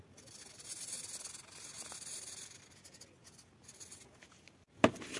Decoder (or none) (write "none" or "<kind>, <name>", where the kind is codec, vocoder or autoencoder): none